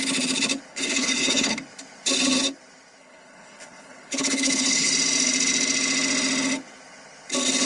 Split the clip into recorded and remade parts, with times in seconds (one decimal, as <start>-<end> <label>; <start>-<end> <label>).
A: 0.0-0.7 recorded; 0.7-1.6 remade; 1.6-3.0 recorded; 3.0-4.9 remade; 4.9-7.7 recorded